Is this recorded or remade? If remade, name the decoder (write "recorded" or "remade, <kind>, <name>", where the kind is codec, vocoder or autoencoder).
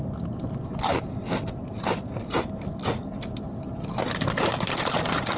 recorded